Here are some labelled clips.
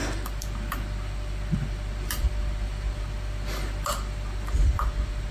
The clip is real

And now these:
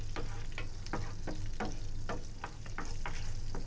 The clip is real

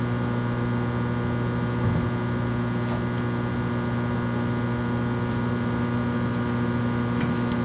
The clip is real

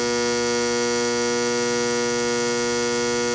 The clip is real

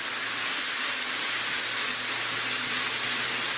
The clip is real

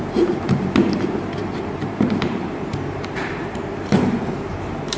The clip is fake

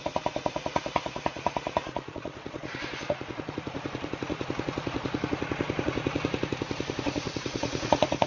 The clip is fake